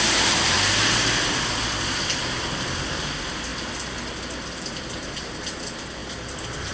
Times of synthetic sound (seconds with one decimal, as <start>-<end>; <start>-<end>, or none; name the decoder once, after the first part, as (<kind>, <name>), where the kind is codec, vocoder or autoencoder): none